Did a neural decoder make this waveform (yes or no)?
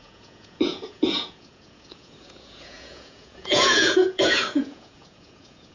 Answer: yes